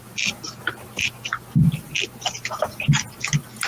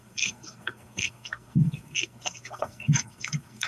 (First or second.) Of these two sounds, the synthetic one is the second